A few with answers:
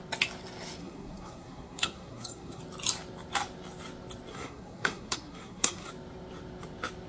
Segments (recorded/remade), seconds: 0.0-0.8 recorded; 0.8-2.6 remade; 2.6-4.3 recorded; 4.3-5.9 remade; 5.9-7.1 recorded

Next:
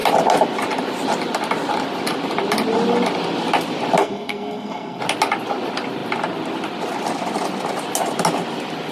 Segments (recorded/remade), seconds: 0.0-4.0 recorded; 4.0-5.0 remade; 5.0-8.9 recorded

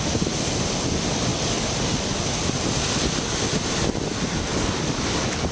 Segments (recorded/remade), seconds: 0.0-5.5 recorded

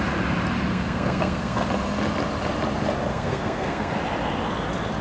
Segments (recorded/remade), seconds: 0.0-0.7 recorded; 0.7-1.7 remade; 1.7-3.1 recorded; 3.1-3.9 remade; 3.9-5.0 recorded

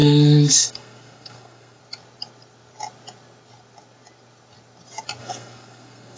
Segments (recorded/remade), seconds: 0.0-1.8 remade; 1.8-5.2 recorded; 5.2-6.2 remade

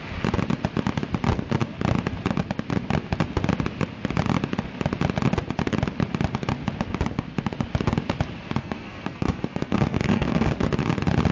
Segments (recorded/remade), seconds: 0.0-8.6 recorded; 8.6-10.5 remade; 10.5-11.3 recorded